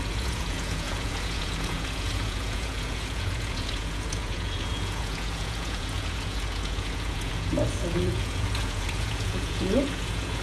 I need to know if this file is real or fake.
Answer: fake